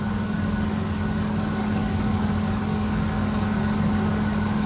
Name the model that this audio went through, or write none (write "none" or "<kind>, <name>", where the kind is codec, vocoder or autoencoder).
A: codec, DAC